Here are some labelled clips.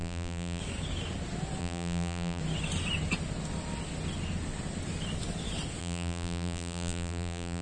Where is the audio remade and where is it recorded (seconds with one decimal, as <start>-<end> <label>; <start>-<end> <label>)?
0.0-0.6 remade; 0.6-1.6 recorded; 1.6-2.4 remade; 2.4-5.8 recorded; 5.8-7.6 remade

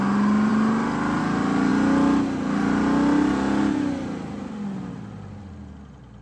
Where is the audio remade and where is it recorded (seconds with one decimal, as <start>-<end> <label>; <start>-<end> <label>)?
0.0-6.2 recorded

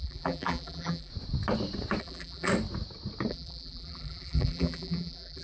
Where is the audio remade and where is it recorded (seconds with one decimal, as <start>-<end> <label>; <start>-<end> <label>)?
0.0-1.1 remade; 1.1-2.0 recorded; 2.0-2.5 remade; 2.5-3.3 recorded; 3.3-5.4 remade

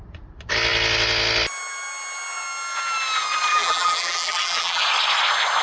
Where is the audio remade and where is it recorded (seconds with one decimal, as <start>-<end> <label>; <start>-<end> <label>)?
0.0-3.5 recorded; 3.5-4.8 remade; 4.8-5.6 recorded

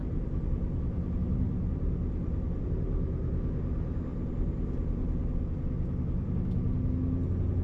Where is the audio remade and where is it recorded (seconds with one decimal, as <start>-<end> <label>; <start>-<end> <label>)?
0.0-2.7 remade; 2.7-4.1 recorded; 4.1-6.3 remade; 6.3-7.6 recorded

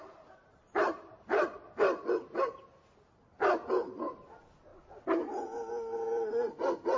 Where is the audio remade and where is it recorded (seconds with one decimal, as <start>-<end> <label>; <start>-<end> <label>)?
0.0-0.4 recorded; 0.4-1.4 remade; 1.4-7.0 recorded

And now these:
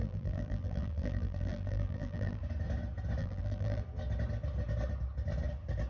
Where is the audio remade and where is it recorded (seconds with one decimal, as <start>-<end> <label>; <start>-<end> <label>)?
0.0-2.4 remade; 2.4-3.2 recorded; 3.2-3.8 remade; 3.8-5.9 recorded